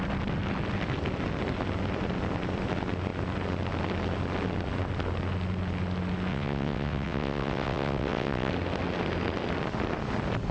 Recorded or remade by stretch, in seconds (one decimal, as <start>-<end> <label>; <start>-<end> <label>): 0.0-6.3 recorded; 6.3-8.5 remade; 8.5-10.5 recorded